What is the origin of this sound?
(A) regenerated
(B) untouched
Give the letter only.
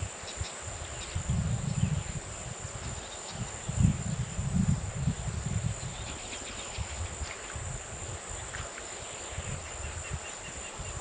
B